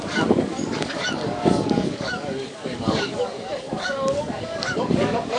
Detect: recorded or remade remade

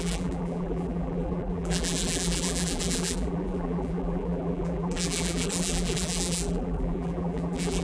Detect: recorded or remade remade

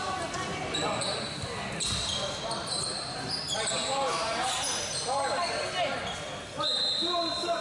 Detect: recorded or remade recorded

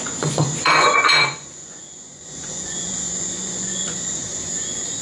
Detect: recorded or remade remade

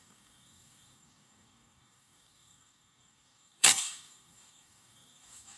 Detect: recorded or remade remade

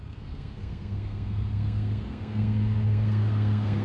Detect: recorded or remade remade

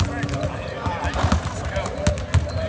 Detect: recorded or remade recorded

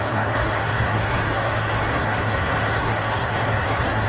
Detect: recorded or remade remade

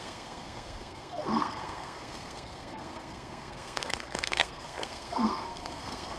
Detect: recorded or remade remade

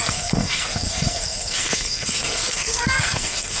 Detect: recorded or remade remade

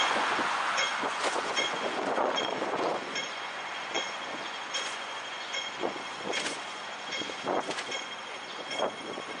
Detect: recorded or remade remade